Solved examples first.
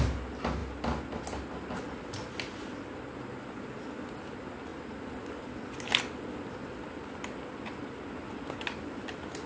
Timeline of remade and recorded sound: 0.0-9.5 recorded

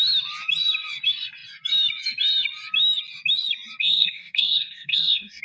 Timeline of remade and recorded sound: 0.0-3.8 recorded; 3.8-5.4 remade

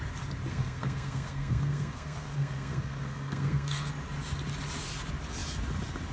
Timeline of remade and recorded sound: 0.0-0.5 recorded; 0.5-3.9 remade; 3.9-6.1 recorded